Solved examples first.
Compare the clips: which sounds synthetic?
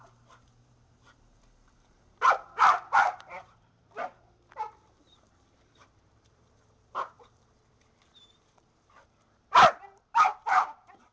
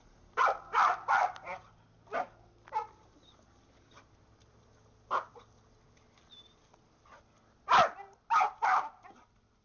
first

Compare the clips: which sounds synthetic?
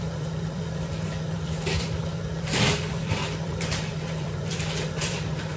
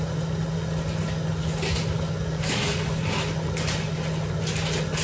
first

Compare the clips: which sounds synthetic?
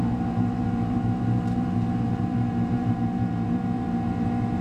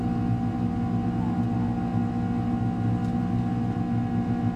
first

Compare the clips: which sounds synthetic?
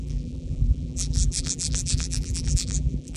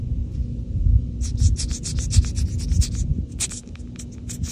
first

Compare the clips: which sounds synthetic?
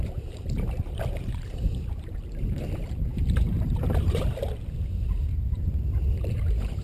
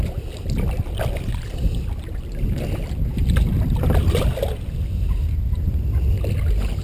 first